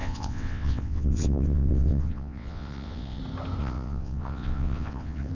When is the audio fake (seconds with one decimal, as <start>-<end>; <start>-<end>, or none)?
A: 0.0-3.2; 3.6-5.3